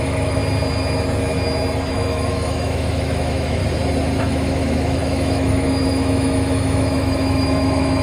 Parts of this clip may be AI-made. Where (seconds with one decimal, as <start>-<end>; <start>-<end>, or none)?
0.0-0.4; 1.9-3.6; 4.2-8.0